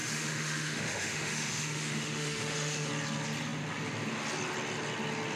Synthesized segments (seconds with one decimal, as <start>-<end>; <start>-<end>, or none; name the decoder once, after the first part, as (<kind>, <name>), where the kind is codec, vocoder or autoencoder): 0.0-2.9 (autoencoder, DAC-VAE)